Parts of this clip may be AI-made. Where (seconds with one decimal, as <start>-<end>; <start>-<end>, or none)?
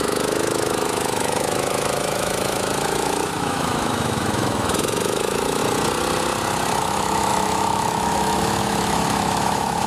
0.0-5.6; 6.8-9.9